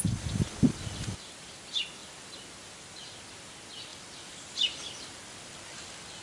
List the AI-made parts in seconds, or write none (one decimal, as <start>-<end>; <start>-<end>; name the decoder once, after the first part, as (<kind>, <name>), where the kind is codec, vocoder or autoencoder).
none

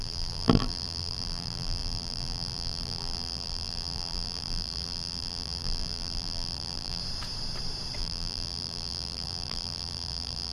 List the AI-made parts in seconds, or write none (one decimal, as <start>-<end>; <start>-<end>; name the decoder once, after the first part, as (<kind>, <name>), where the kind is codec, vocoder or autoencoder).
0.0-7.0 (vocoder, BigVGAN v2); 8.0-10.5

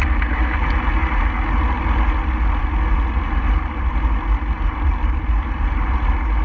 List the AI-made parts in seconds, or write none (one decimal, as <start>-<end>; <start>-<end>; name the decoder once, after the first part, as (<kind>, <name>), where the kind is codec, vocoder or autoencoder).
1.0-1.6 (vocoder, BigVGAN v2)

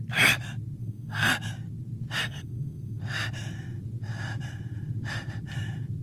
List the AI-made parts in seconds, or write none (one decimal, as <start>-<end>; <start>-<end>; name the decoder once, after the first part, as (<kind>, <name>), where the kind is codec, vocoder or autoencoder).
0.8-1.3 (codec, SNAC); 2.2-3.0

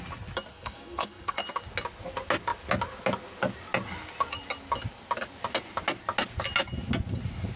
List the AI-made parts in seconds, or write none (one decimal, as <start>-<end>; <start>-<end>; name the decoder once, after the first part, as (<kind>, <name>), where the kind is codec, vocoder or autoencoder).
0.5-1.4 (codec, SNAC)

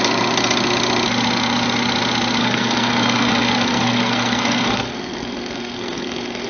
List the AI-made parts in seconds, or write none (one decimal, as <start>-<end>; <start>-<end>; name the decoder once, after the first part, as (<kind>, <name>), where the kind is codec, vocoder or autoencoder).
2.4-6.5 (codec, SNAC)